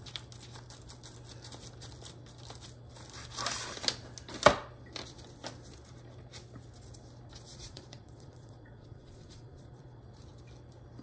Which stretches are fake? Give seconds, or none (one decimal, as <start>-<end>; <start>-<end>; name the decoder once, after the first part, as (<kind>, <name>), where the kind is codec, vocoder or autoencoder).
7.5-10.0 (vocoder, Vocos)